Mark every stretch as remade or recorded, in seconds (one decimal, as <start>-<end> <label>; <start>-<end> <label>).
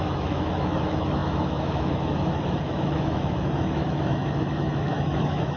0.0-5.6 remade